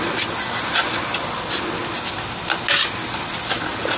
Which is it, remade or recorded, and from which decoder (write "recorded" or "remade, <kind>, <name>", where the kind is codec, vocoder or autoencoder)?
recorded